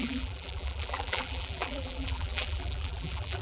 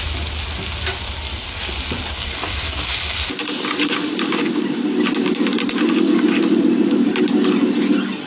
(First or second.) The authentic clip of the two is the second